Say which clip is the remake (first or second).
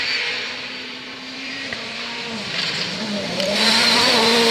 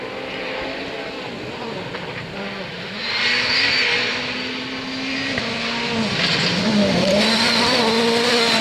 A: first